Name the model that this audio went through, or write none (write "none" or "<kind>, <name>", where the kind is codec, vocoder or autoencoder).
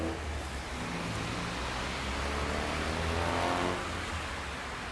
none